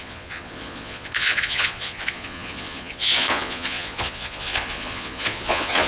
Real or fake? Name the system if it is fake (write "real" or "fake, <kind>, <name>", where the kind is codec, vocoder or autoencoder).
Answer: fake, vocoder, Vocos